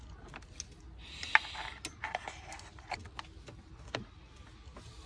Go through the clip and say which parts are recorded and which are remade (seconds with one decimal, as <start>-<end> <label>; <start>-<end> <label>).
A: 0.0-5.1 recorded